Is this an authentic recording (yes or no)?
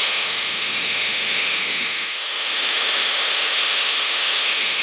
no